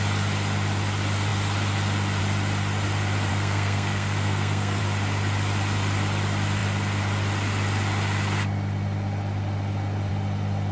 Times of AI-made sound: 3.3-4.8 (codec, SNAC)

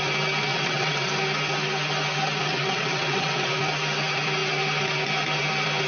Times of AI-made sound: 0.5-1.1 (vocoder, WaveNeXt); 2.5-3.5

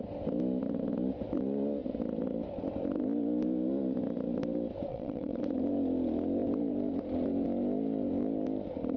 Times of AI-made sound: 4.9-5.4 (vocoder, WaveNeXt)

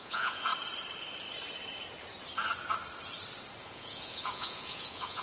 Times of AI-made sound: 0.0-0.5 (vocoder, Vocos); 3.6-5.2

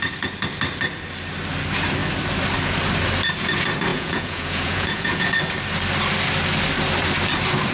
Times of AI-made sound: 3.9-5.3 (vocoder, Vocos)

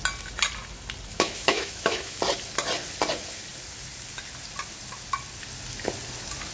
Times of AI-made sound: 1.1-2.2 (autoencoder, DAC-VAE)

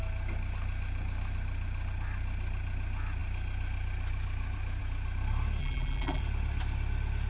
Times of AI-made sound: 5.6-6.2 (vocoder, BigVGAN v2)